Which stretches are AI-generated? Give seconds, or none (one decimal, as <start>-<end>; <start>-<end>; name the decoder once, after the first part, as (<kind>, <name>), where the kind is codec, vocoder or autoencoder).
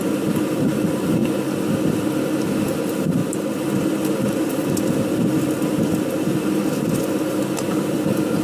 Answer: none